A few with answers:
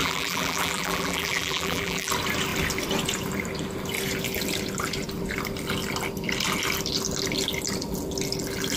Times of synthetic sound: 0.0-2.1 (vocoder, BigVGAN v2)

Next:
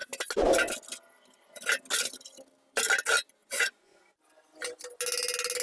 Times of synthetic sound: 3.4-4.0 (vocoder, Vocos)

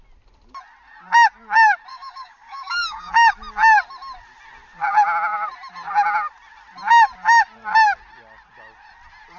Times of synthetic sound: 1.9-3.1 (codec, DAC)

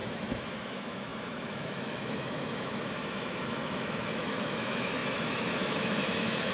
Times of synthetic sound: 0.0-6.5 (autoencoder, DAC-VAE)